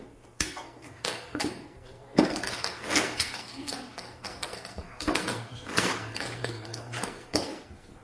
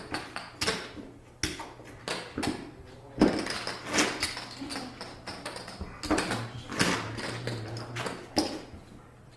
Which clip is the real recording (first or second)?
second